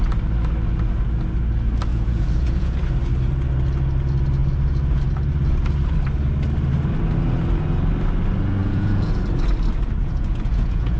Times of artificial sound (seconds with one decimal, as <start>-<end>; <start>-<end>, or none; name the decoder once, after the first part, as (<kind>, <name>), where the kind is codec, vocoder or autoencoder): 1.9-2.8 (vocoder, Vocos); 8.6-9.2; 10.0-11.0